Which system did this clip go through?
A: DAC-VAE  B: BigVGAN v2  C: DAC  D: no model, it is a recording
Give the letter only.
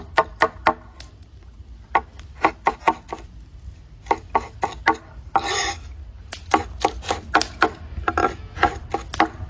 D